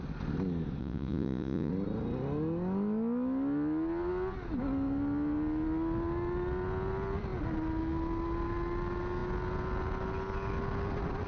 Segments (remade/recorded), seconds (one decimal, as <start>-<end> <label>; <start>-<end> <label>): 0.0-0.8 recorded; 0.8-1.7 remade; 1.7-11.3 recorded